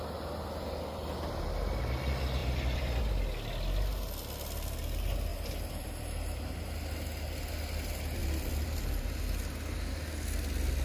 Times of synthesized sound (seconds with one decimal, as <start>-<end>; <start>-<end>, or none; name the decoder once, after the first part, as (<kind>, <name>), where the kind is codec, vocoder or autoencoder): 2.4-3.0 (vocoder, BigVGAN v2); 5.3-6.4; 8.2-9.2